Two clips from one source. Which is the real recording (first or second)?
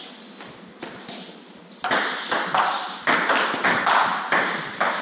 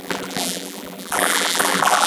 first